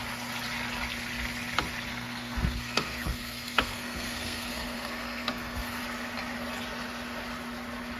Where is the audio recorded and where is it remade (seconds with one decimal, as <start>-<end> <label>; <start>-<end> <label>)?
0.0-1.9 recorded; 1.9-5.8 remade; 5.8-8.0 recorded